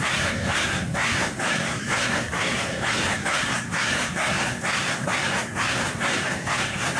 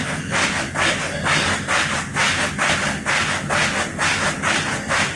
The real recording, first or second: second